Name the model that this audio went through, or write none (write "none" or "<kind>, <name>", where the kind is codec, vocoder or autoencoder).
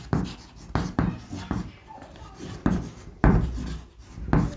none